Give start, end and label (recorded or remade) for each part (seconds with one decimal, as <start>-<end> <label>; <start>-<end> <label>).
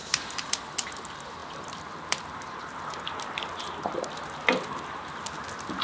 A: 0.0-0.5 remade; 0.5-5.8 recorded